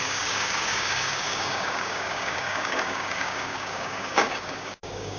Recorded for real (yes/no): no